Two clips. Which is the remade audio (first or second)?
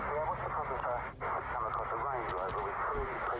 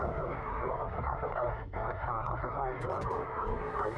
second